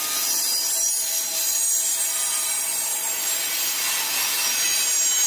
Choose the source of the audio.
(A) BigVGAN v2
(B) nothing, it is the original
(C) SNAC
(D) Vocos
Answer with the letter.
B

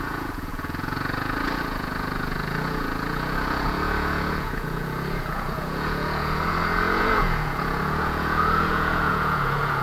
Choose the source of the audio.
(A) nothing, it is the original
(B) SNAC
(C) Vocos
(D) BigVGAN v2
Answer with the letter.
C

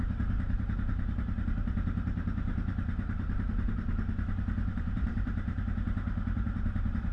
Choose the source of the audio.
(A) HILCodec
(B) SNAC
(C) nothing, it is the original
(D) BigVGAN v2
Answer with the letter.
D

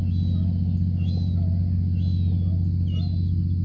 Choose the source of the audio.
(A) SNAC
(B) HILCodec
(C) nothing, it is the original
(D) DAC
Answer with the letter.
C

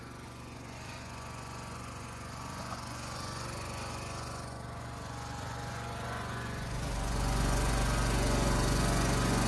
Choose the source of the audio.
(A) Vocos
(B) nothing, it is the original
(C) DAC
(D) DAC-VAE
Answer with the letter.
A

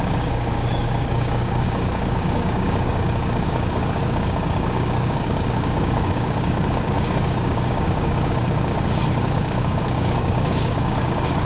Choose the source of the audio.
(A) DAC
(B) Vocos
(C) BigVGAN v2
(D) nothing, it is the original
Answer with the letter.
A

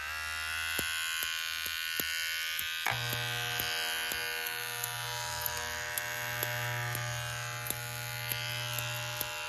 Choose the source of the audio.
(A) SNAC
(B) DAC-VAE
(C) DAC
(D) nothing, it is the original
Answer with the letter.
D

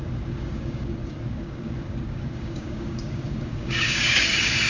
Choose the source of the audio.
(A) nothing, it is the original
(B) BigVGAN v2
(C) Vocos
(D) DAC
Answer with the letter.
D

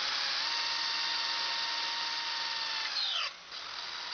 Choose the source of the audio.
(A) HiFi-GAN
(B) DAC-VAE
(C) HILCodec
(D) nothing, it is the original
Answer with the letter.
D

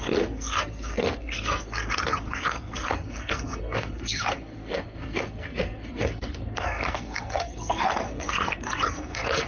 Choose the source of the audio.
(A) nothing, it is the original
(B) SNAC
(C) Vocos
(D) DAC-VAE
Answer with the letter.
B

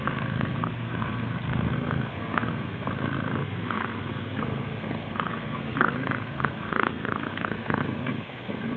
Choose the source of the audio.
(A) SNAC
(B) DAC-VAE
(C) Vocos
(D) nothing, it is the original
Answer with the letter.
A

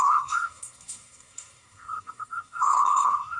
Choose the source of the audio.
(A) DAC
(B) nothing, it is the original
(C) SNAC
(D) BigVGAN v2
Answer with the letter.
C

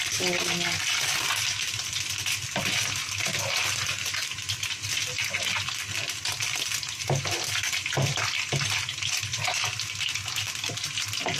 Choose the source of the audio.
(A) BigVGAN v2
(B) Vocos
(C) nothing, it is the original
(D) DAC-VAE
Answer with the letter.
C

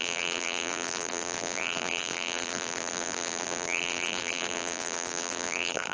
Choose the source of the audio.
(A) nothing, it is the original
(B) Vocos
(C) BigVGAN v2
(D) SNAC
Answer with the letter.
C